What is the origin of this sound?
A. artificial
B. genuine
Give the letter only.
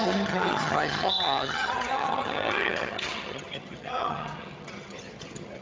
A